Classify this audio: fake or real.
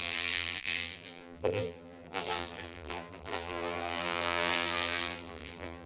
fake